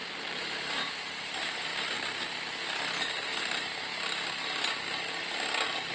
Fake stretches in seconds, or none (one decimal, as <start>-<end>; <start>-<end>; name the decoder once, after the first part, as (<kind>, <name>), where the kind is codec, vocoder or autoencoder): 0.0-1.7 (vocoder, BigVGAN v2); 3.4-3.9